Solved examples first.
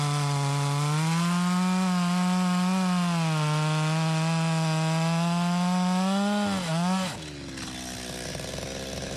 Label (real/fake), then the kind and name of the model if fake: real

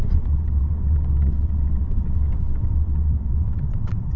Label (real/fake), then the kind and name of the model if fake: fake, vocoder, WaveNeXt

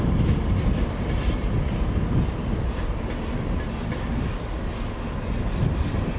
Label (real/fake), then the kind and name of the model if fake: real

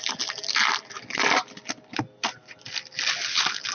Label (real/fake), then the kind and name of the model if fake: real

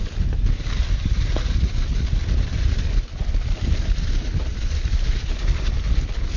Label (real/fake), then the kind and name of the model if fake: real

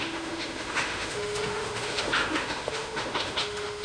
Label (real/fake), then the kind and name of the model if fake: fake, autoencoder, DAC-VAE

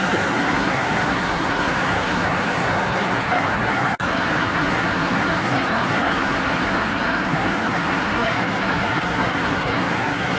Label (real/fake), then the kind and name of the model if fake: fake, codec, SNAC